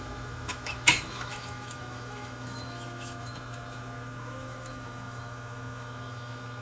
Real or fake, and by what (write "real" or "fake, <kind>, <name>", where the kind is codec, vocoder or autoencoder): fake, autoencoder, DAC-VAE